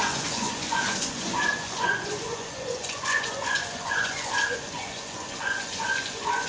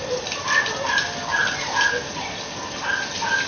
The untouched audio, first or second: second